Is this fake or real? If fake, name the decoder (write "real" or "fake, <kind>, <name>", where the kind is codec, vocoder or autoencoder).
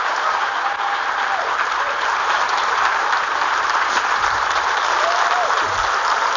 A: fake, vocoder, BigVGAN v2